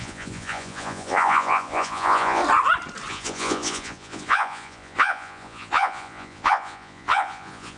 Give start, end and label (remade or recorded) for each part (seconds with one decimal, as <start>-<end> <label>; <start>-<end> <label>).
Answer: 0.0-2.4 remade; 2.4-3.1 recorded; 3.1-7.8 remade